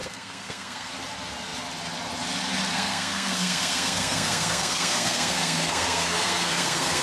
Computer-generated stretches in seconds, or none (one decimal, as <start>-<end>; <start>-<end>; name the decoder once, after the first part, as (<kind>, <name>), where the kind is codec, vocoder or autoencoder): 0.0-0.9 (codec, SNAC); 2.7-7.0